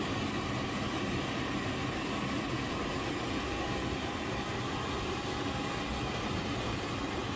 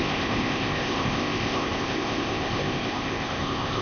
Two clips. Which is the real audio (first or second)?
first